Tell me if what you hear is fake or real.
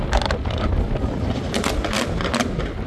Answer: real